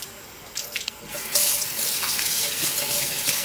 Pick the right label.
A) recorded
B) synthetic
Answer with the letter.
B